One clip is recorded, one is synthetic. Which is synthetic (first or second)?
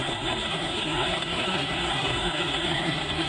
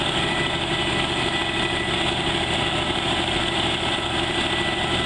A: first